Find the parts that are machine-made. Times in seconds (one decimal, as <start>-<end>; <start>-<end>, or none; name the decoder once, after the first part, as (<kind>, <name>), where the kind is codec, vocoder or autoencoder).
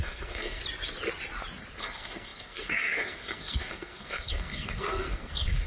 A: 0.0-0.6 (codec, SNAC); 1.8-5.7